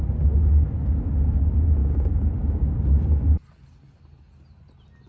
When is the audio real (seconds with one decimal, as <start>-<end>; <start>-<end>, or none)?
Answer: 0.0-5.1